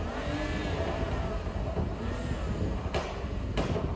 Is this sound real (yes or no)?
yes